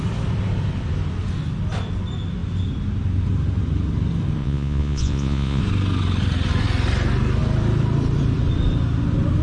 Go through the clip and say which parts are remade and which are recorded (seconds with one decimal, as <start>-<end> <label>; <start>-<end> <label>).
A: 0.0-4.4 recorded; 4.4-5.6 remade; 5.6-9.4 recorded

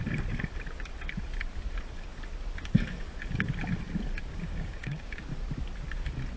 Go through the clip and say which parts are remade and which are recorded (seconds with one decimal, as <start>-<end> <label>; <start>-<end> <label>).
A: 0.0-4.3 recorded; 4.3-5.2 remade; 5.2-6.4 recorded

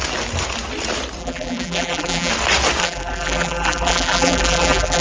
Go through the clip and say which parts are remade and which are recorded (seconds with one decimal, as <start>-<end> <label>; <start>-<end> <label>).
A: 0.0-1.2 recorded; 1.2-2.3 remade; 2.3-2.8 recorded; 2.8-5.0 remade

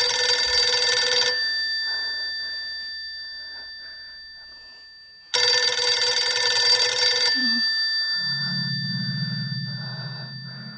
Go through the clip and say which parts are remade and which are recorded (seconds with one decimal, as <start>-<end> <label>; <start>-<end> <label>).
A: 0.0-10.8 recorded

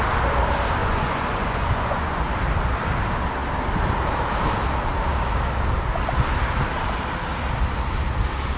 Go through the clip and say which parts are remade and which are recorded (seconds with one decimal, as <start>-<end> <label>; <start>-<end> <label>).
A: 0.0-0.8 recorded; 0.8-2.3 remade; 2.3-8.6 recorded